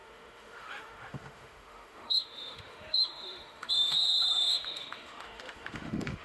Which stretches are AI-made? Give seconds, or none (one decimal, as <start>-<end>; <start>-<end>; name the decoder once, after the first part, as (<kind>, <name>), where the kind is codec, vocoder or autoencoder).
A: 0.0-6.2 (autoencoder, DAC-VAE)